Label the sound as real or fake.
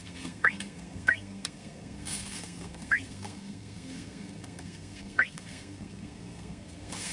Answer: fake